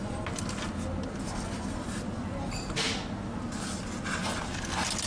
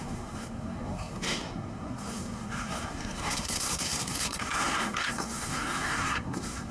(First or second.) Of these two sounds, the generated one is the second